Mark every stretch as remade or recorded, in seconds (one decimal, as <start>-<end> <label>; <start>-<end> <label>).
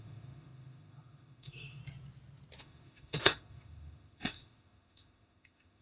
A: 0.0-1.8 remade; 1.8-2.6 recorded; 2.6-5.8 remade